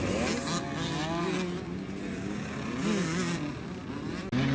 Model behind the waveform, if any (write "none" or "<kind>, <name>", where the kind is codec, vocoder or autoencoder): none